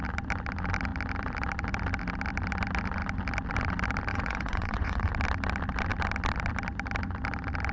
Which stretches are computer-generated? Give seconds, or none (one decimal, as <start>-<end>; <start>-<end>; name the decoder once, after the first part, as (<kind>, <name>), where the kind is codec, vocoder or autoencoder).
4.1-5.1 (vocoder, Vocos)